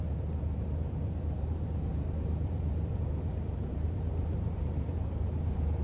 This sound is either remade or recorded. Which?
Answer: remade